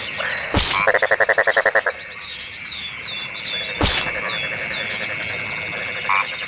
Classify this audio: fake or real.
real